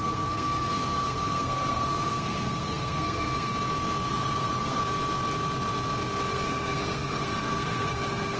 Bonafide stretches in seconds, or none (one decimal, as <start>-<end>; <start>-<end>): 3.5-4.1; 4.8-6.3